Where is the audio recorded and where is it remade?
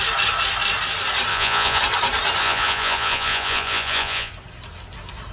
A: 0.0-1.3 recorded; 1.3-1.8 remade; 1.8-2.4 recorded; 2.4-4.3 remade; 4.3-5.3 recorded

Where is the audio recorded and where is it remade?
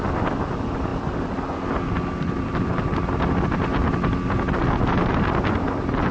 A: 0.0-6.1 recorded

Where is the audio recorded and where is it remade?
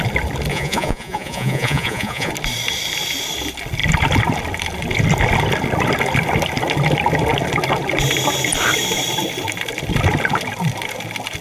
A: 0.0-0.5 recorded; 0.5-2.3 remade; 2.3-11.4 recorded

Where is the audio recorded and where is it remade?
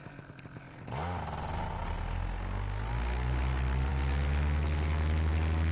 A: 0.0-5.7 recorded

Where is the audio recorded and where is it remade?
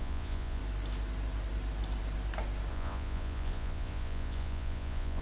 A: 0.0-0.6 remade; 0.6-2.7 recorded; 2.7-5.2 remade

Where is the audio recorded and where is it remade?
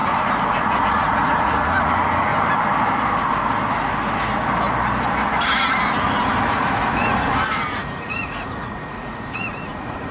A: 0.0-0.5 recorded; 0.5-2.3 remade; 2.3-6.4 recorded; 6.4-10.1 remade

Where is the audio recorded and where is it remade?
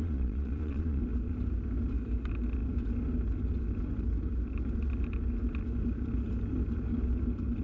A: 0.0-1.0 remade; 1.0-7.6 recorded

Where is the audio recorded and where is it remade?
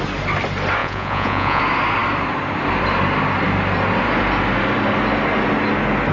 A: 0.0-0.8 recorded; 0.8-1.6 remade; 1.6-6.1 recorded